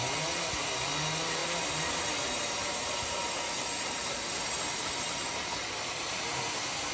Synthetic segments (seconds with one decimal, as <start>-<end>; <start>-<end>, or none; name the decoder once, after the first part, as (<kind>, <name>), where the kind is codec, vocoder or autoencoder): none